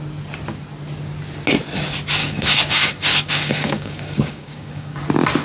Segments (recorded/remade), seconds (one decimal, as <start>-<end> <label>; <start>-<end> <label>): 0.0-2.2 recorded; 2.2-5.0 remade; 5.0-5.4 recorded